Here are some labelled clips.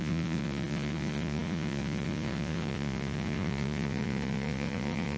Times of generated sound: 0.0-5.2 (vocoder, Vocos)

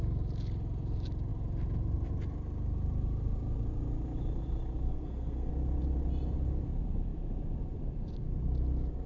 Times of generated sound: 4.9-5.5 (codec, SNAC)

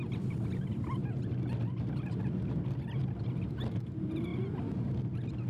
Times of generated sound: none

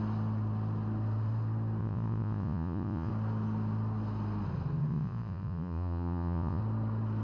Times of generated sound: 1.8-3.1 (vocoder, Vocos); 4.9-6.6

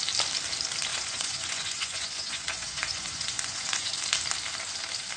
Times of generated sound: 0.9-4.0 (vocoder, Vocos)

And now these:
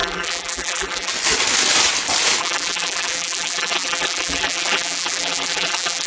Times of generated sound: 0.0-1.1 (vocoder, BigVGAN v2); 2.4-6.1